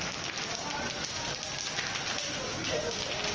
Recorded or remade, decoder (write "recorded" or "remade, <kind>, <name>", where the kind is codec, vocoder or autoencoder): recorded